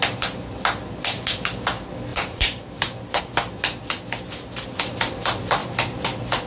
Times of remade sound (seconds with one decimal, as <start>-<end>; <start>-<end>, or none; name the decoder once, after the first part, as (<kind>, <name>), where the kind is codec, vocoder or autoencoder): 2.1-3.2 (vocoder, BigVGAN v2)